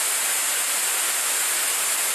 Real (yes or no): yes